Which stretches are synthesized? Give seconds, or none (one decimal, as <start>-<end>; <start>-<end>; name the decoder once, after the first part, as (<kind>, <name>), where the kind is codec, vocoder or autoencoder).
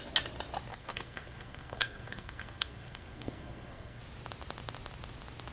0.7-4.0 (codec, SNAC)